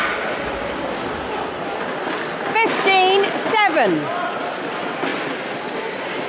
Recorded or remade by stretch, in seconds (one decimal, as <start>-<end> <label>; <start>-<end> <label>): 0.0-6.3 recorded